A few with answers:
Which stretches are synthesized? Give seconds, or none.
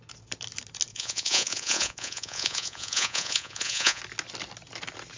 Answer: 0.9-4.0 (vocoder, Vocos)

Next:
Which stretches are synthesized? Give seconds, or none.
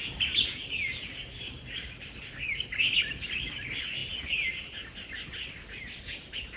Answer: none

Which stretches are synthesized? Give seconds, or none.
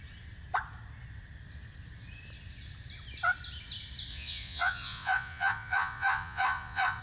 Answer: 4.1-7.0 (vocoder, Vocos)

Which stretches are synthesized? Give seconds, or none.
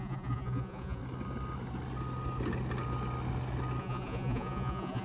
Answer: 0.0-1.0 (vocoder, Vocos); 3.8-5.0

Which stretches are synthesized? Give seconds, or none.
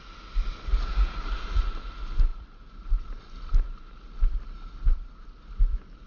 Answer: 0.9-1.6 (vocoder, Vocos)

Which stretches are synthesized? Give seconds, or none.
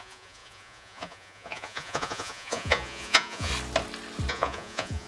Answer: 0.0-3.5 (vocoder, Vocos); 4.3-5.1